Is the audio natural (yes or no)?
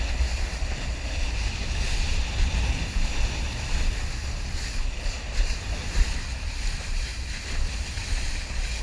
yes